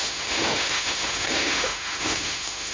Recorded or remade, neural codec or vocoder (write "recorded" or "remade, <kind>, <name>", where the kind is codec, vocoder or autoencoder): remade, autoencoder, DAC-VAE